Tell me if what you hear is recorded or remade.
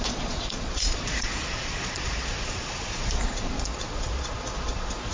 remade